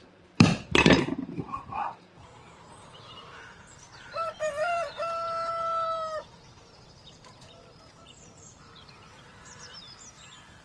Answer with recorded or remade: remade